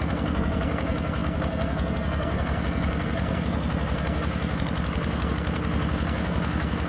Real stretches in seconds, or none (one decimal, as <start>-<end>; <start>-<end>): none